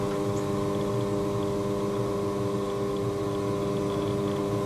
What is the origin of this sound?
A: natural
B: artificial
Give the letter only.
A